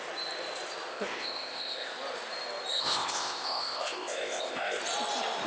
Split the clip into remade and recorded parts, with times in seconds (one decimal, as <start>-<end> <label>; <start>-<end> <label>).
0.0-0.9 recorded; 0.9-1.9 remade; 1.9-2.7 recorded; 2.7-4.8 remade; 4.8-5.5 recorded